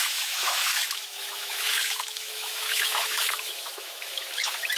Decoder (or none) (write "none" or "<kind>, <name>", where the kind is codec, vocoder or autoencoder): autoencoder, DAC-VAE